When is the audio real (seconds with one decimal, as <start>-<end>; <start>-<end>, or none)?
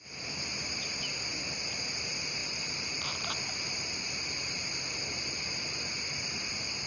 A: 0.0-2.4; 6.5-6.9